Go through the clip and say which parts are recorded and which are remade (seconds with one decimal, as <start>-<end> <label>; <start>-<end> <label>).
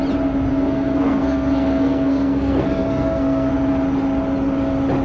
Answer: 0.0-0.5 recorded; 0.5-3.5 remade; 3.5-5.0 recorded